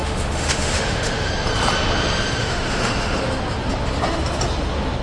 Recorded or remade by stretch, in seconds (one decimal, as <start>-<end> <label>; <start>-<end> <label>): 0.0-1.3 remade; 1.3-2.4 recorded; 2.4-3.2 remade; 3.2-5.0 recorded